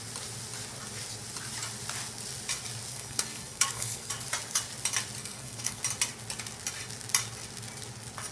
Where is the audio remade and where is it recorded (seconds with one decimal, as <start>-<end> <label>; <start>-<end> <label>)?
0.0-2.9 recorded; 2.9-4.1 remade; 4.1-5.2 recorded; 5.2-5.8 remade; 5.8-8.3 recorded